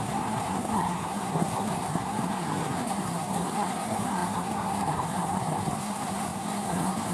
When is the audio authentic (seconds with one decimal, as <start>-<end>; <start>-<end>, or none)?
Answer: none